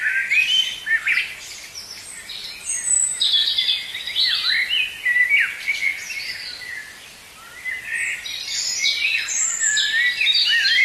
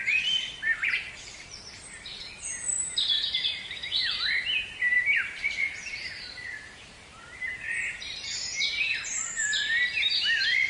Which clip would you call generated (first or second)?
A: second